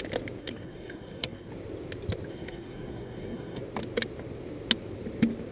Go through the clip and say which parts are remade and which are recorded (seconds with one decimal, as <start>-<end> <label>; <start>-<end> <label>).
0.0-0.4 recorded; 0.4-1.5 remade; 1.5-2.3 recorded; 2.3-3.6 remade; 3.6-5.5 recorded

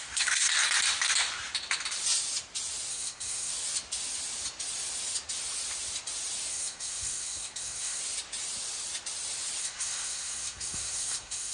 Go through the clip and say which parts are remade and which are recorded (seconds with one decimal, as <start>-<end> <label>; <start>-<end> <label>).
0.0-0.5 remade; 0.5-2.9 recorded; 2.9-3.5 remade; 3.5-6.5 recorded; 6.5-8.0 remade; 8.0-9.6 recorded; 9.6-11.5 remade